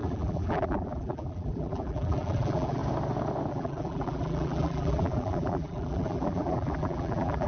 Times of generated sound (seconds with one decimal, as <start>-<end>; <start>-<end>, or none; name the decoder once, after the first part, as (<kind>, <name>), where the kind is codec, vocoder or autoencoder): 0.0-2.8 (vocoder, BigVGAN v2); 3.5-7.5